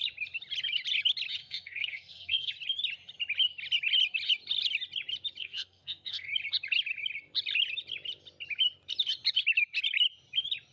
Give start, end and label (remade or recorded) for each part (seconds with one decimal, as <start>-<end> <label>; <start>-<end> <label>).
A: 0.0-1.4 recorded; 1.4-2.5 remade; 2.5-5.4 recorded; 5.4-6.3 remade; 6.3-10.7 recorded